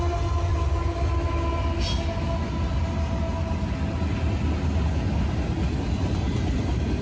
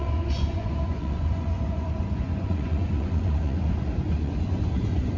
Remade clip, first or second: second